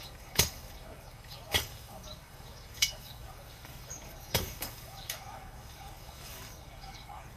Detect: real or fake fake